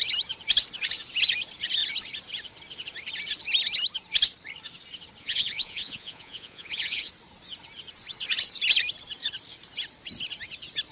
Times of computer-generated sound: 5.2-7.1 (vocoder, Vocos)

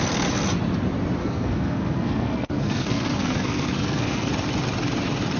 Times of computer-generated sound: 1.2-4.3 (codec, SNAC)

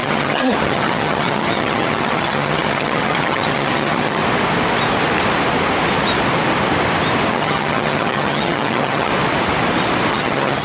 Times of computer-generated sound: 0.0-4.2 (vocoder, HiFi-GAN); 7.3-9.1; 10.1-10.6

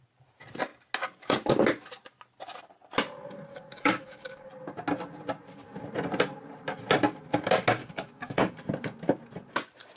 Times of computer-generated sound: 3.5-4.5 (codec, DAC); 7.8-8.5

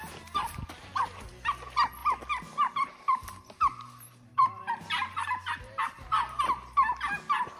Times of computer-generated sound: 2.0-6.4 (vocoder, BigVGAN v2)

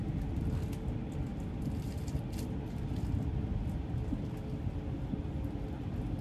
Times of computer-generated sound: none

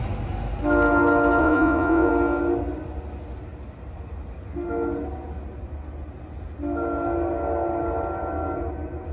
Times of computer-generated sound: 1.4-2.1 (vocoder, Vocos)

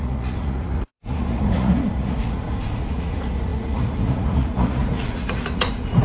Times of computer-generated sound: 0.0-6.0 (vocoder, Vocos)